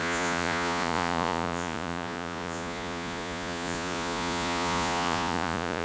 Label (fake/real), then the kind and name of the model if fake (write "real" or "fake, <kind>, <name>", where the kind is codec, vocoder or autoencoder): fake, vocoder, Vocos